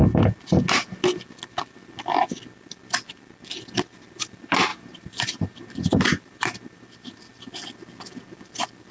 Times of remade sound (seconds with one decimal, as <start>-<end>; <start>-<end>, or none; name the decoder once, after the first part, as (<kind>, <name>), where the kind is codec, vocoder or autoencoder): 4.7-7.2 (vocoder, BigVGAN v2)